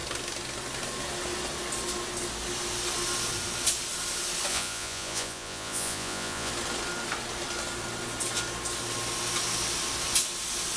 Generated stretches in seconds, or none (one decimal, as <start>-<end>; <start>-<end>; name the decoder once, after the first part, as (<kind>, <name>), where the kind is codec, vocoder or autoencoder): 4.5-6.5 (vocoder, Vocos)